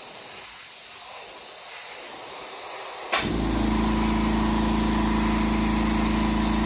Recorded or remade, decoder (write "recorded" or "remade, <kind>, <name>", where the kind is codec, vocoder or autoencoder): recorded